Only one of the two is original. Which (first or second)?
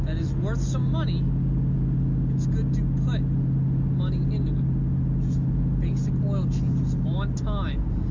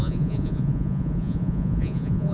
first